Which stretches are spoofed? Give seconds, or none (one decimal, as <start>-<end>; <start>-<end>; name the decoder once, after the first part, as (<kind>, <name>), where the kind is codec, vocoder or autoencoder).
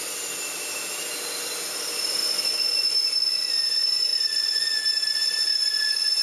2.2-2.9 (vocoder, BigVGAN v2)